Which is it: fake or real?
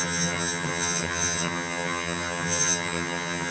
fake